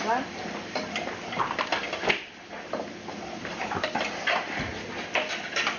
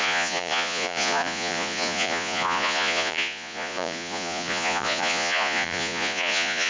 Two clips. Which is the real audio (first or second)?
first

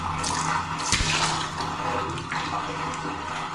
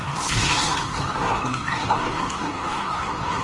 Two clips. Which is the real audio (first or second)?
first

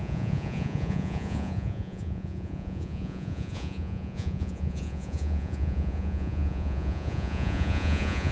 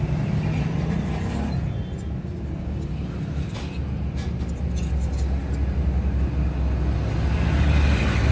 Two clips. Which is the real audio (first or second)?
second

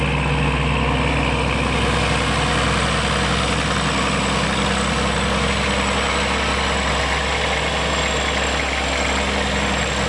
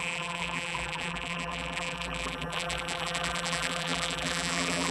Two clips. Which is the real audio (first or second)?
first